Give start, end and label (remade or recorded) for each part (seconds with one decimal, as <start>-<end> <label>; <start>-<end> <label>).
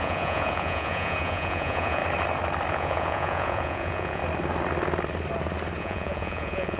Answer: 0.0-2.0 remade; 2.0-2.7 recorded; 2.7-4.2 remade; 4.2-5.8 recorded; 5.8-6.8 remade